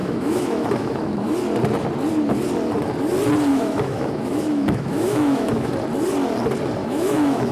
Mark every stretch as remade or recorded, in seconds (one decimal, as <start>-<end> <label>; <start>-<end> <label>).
0.0-1.3 remade; 1.3-3.5 recorded; 3.5-5.7 remade; 5.7-6.8 recorded; 6.8-7.5 remade